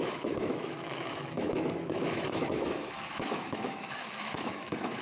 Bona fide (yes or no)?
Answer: no